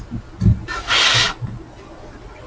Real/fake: real